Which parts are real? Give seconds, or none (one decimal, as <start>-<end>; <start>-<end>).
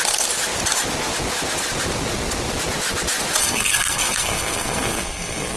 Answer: 0.0-3.4